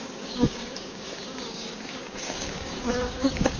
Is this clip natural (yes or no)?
no